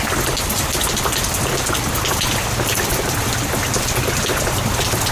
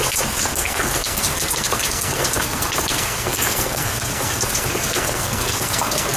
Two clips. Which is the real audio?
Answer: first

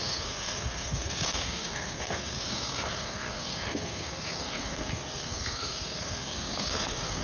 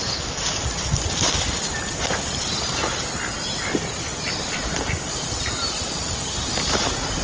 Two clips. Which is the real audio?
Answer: second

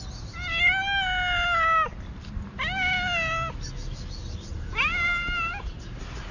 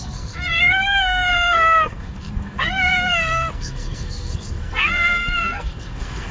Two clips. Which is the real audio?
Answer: first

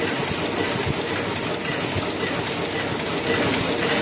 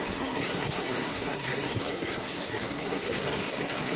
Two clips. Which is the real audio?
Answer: first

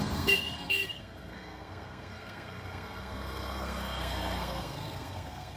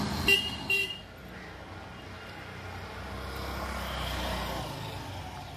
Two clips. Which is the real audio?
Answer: second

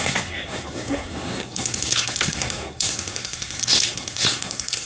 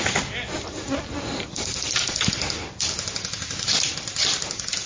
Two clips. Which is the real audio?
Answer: second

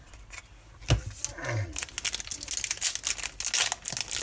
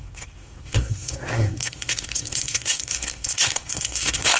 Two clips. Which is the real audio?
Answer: first